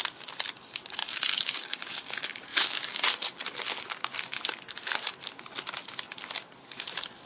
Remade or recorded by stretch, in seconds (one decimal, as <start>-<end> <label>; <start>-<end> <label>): 0.0-1.0 recorded; 1.0-1.8 remade; 1.8-2.5 recorded; 2.5-3.1 remade; 3.1-7.3 recorded